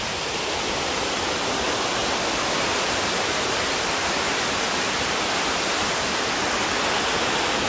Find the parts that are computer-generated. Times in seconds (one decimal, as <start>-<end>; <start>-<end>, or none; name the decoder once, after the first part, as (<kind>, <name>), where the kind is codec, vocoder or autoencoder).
none